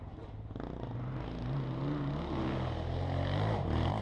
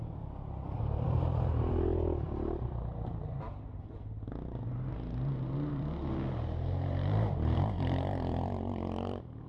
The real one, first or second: first